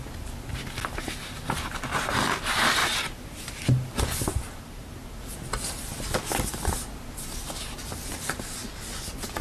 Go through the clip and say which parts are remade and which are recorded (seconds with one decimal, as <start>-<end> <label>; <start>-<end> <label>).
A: 0.0-2.8 recorded; 2.8-3.6 remade; 3.6-4.3 recorded; 4.3-5.2 remade; 5.2-9.4 recorded